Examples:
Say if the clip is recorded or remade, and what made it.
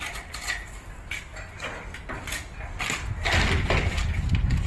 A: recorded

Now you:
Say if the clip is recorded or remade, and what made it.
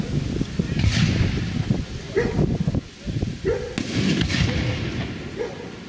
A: recorded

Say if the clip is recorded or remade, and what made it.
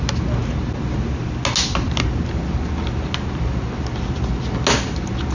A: recorded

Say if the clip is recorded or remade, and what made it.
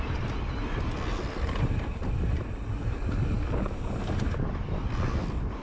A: recorded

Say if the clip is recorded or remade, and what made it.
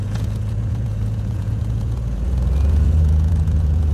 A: remade, vocoder, Vocos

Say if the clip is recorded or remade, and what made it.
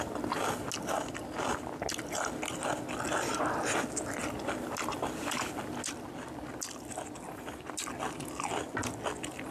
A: recorded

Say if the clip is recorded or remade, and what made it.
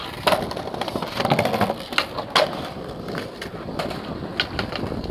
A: recorded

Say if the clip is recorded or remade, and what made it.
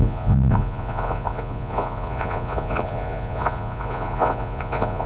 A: remade, vocoder, Vocos